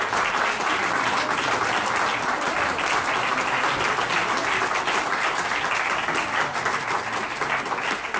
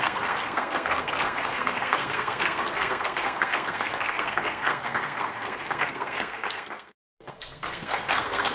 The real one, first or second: first